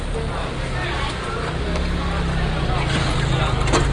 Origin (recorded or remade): recorded